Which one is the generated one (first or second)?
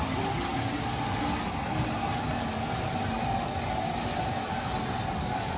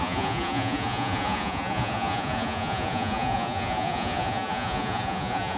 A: second